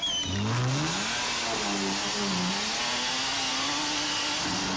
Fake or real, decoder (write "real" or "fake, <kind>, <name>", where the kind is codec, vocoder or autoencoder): real